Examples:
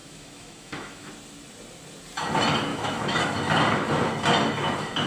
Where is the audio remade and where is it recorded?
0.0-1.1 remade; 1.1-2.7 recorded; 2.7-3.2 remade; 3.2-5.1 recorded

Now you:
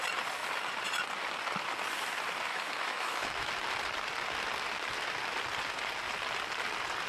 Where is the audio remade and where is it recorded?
0.0-2.5 recorded; 2.5-3.5 remade; 3.5-7.1 recorded

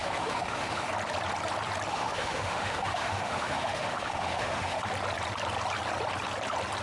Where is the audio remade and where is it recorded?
0.0-0.9 remade; 0.9-1.9 recorded; 1.9-4.8 remade; 4.8-6.8 recorded